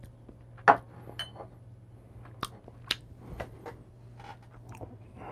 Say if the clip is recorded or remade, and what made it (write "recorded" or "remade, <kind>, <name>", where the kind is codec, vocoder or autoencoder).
recorded